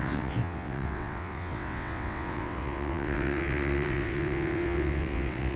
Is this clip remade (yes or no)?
yes